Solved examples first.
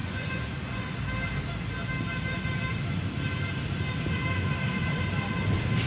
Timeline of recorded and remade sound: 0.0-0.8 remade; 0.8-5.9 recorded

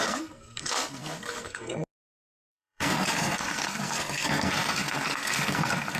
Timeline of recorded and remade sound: 0.0-6.0 remade

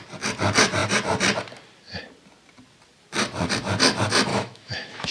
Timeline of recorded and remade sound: 0.0-4.3 recorded; 4.3-5.1 remade